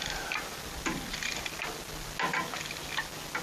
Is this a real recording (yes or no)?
yes